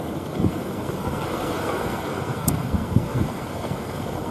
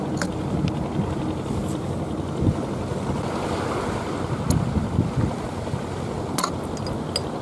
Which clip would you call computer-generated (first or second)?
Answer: first